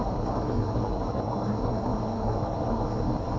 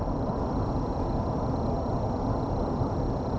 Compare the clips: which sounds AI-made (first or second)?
first